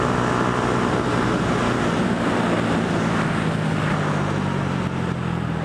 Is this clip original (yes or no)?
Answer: yes